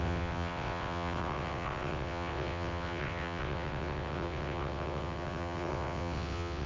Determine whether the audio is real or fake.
fake